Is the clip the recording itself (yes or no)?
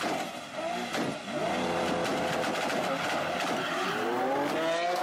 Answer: yes